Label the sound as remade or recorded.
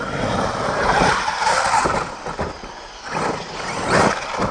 recorded